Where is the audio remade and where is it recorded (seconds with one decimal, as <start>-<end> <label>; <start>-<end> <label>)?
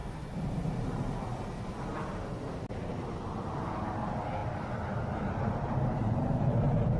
0.0-7.0 recorded